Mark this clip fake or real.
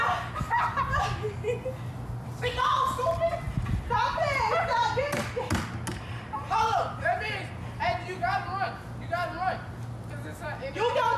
real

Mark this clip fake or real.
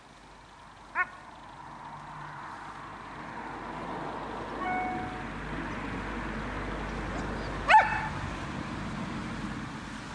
real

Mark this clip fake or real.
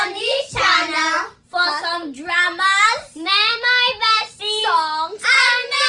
real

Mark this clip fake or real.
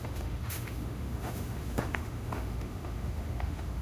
fake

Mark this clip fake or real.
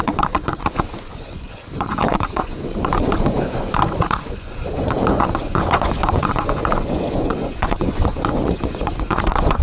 fake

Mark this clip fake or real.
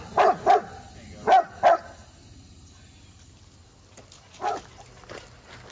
real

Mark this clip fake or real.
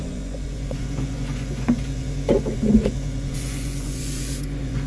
fake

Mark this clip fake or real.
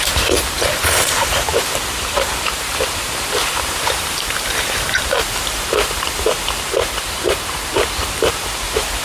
fake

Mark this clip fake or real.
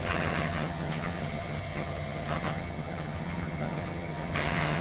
fake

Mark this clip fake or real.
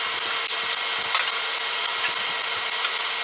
real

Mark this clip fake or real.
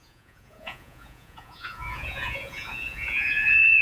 fake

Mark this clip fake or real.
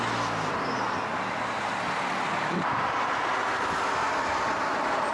real